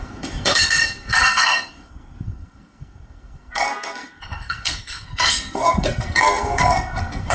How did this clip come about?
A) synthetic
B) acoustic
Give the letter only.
A